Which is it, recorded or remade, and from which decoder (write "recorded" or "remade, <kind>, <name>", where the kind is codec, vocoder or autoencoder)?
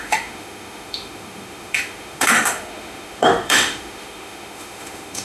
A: remade, autoencoder, DAC-VAE